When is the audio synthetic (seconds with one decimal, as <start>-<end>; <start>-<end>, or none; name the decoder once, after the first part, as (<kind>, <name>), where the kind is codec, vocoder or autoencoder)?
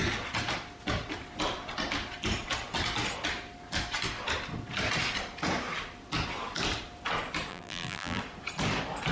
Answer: 7.5-8.2 (vocoder, BigVGAN v2)